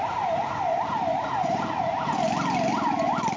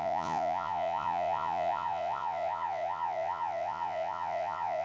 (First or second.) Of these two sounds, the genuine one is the first